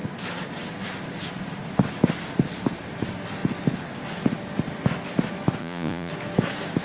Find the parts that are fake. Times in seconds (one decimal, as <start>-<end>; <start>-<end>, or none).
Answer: 5.6-6.1